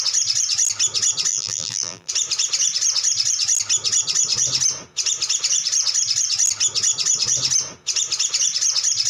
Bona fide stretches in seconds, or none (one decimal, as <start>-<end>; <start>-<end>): 0.0-1.3; 2.1-9.1

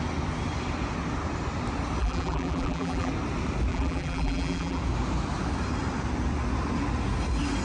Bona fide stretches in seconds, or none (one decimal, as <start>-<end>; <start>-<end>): 0.0-2.0; 3.1-3.7; 4.8-7.6

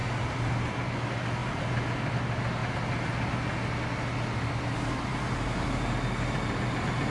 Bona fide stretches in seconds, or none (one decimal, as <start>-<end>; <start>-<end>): 0.7-1.4; 2.1-5.1; 5.9-7.1